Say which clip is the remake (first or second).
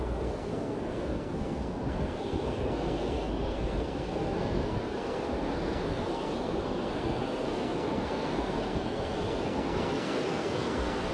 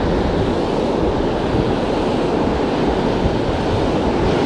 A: first